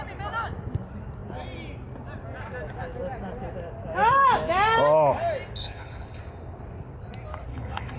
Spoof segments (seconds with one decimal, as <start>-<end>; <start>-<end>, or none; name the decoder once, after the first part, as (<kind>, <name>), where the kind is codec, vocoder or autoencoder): 5.6-6.2 (codec, HILCodec); 7.5-8.0